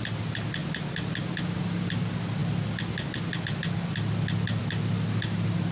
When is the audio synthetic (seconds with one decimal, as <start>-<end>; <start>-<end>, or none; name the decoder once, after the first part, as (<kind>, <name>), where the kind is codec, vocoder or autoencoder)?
none

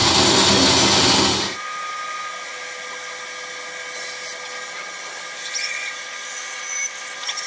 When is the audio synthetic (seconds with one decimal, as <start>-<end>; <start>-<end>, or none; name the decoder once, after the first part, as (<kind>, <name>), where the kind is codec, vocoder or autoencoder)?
none